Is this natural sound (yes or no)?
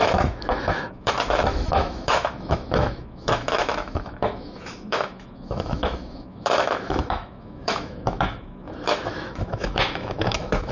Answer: no